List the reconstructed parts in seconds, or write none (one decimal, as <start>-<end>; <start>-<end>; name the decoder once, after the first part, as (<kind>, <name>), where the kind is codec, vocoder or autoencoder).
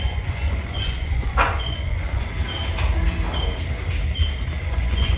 0.0-2.3 (vocoder, Vocos); 4.6-5.2